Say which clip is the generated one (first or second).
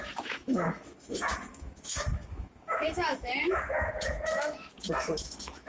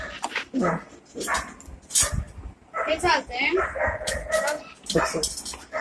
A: first